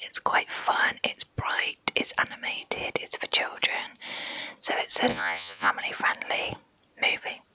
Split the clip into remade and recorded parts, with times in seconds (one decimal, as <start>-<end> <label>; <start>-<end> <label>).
0.0-5.1 recorded; 5.1-5.7 remade; 5.7-7.5 recorded

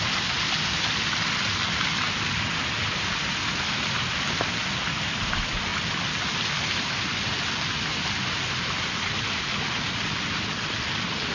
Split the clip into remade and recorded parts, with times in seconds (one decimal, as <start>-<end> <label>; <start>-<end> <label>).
0.0-11.3 recorded

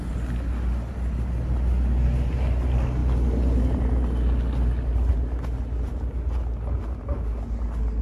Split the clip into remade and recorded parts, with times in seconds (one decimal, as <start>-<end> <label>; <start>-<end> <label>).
0.0-8.0 recorded

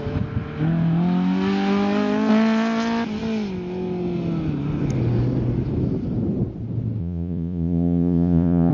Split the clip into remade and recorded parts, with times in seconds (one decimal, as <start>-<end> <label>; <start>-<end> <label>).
0.0-7.0 recorded; 7.0-8.7 remade